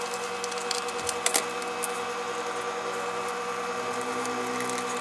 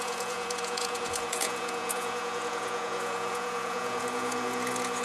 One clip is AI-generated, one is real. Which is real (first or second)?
first